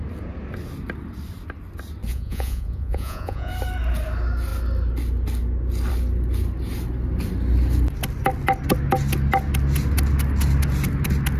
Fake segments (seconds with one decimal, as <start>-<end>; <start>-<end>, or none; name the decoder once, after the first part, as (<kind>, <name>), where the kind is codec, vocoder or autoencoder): 2.1-3.5 (vocoder, Vocos)